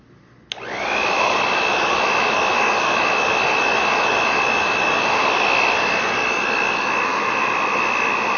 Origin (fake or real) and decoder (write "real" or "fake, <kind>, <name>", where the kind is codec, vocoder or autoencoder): real